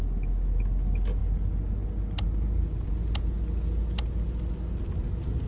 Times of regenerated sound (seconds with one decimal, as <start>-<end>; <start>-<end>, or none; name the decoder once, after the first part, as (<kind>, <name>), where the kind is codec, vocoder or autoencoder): none